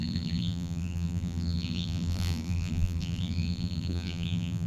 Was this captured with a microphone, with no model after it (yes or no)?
no